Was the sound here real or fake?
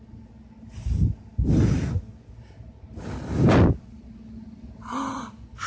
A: real